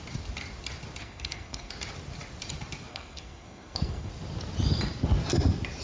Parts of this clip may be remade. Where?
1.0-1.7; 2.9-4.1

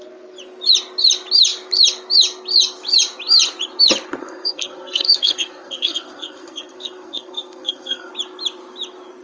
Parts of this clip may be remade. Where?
4.2-8.1

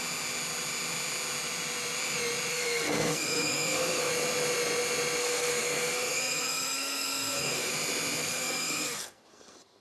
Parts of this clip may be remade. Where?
2.5-4.1; 5.2-7.7; 8.2-9.8

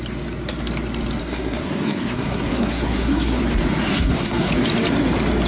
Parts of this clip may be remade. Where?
1.2-3.4; 3.9-4.5

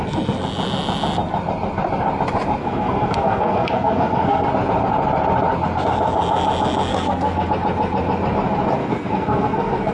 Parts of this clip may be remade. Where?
2.6-4.5; 6.9-7.5; 8.8-9.9

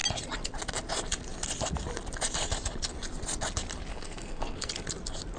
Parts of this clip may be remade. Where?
3.9-4.7

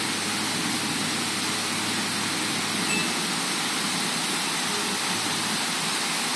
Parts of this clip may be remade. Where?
none

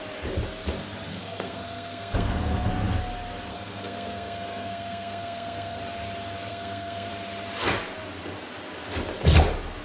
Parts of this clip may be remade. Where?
1.1-2.7; 3.5-5.8; 6.5-7.1